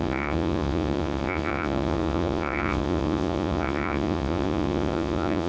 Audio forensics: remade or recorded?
remade